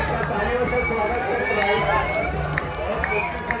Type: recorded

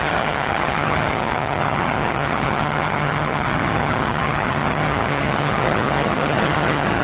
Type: remade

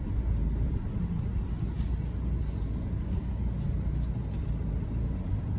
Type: recorded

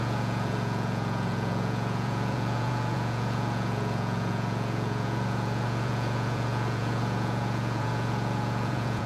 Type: remade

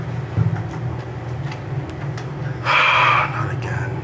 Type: recorded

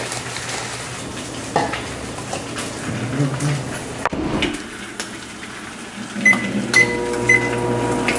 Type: recorded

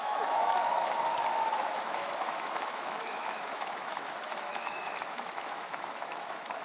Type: remade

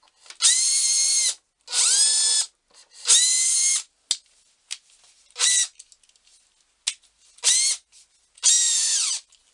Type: recorded